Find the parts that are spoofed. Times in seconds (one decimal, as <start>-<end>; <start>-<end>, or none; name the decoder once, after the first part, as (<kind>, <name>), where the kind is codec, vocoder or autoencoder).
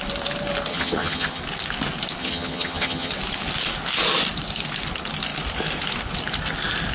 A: 0.7-1.4 (vocoder, HiFi-GAN); 2.2-3.1